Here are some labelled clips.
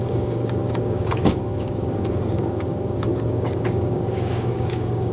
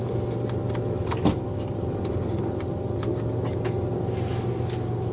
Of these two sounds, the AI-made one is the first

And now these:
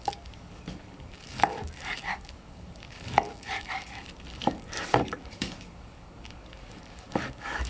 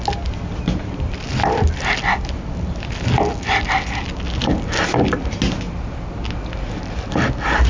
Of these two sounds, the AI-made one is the first